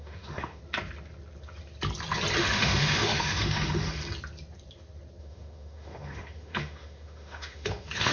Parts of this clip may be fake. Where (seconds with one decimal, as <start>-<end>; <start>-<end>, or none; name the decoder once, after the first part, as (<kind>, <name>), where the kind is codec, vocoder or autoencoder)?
0.0-0.6 (autoencoder, DAC-VAE); 2.4-4.0; 5.2-8.1